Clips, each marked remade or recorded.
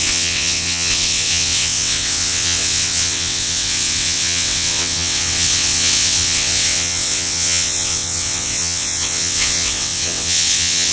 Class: remade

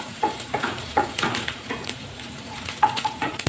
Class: remade